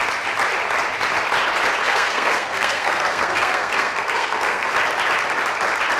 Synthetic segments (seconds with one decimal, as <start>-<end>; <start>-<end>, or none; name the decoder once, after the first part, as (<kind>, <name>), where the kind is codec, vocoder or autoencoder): 1.8-4.7 (codec, SNAC)